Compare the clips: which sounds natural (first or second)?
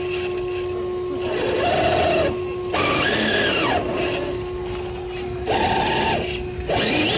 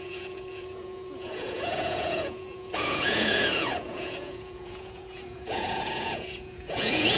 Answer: first